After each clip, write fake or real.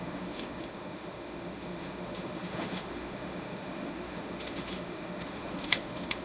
fake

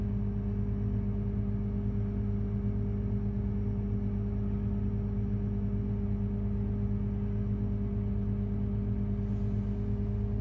real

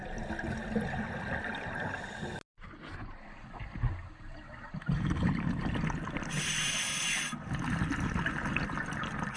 real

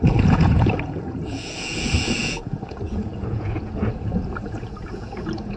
fake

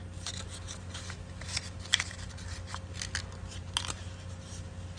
real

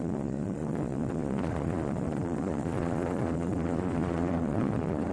fake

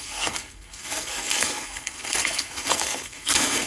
fake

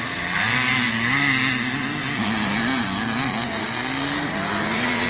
real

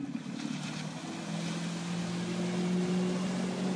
real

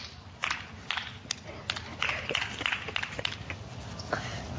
real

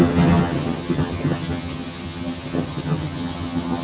fake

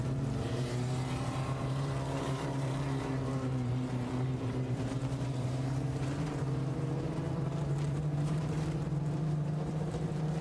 fake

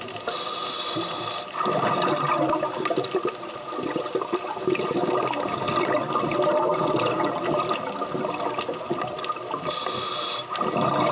real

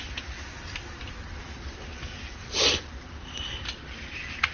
real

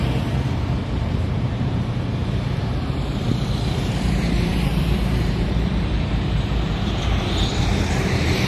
fake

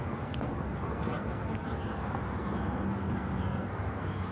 fake